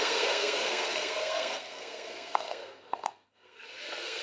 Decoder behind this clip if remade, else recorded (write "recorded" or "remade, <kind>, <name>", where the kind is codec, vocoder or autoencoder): remade, codec, SNAC